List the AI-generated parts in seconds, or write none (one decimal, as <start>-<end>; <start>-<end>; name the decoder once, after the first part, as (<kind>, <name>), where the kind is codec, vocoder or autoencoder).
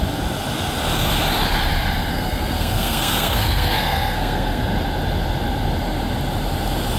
2.1-4.6 (codec, SNAC)